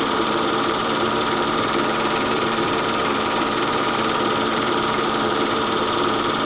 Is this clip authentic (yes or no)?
no